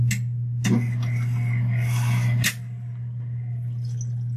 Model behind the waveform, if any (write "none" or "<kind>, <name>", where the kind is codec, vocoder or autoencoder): none